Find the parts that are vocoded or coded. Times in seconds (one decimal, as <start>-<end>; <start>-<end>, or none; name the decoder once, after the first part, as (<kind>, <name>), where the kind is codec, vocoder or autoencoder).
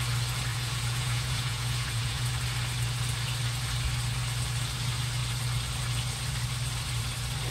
0.5-2.3 (vocoder, Vocos)